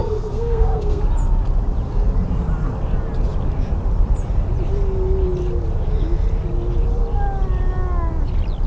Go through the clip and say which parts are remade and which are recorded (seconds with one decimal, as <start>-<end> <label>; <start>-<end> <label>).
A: 0.0-1.0 remade; 1.0-8.7 recorded